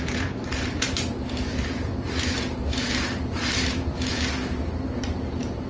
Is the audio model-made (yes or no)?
yes